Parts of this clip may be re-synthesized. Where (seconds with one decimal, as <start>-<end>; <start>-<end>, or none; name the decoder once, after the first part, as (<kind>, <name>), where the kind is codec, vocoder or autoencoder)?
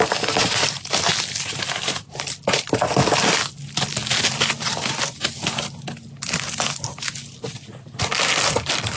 none